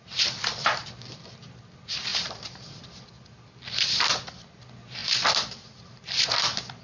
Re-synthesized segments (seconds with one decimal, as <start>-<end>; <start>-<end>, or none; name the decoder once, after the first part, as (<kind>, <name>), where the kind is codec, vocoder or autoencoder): 2.1-2.8 (vocoder, BigVGAN v2)